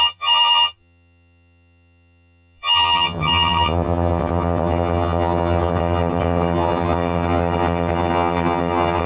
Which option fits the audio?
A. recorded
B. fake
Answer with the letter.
B